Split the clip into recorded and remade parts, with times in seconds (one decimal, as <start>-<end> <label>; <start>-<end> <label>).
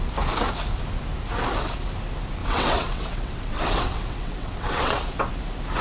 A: 0.0-2.4 recorded; 2.4-5.3 remade; 5.3-5.8 recorded